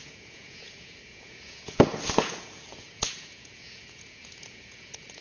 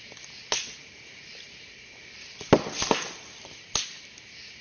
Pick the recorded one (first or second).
second